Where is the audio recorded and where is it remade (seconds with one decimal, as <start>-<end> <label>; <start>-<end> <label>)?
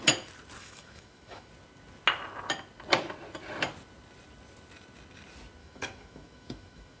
0.0-0.6 recorded; 0.6-1.5 remade; 1.5-5.6 recorded; 5.6-7.0 remade